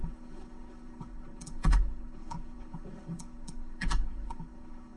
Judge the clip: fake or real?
fake